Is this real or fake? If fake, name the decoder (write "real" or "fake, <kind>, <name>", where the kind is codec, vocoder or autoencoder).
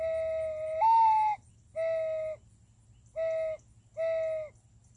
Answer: real